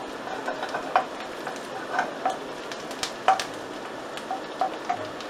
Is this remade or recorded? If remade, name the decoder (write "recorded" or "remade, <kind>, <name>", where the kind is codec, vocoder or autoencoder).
recorded